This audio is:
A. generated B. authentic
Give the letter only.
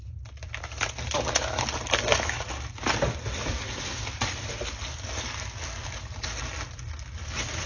B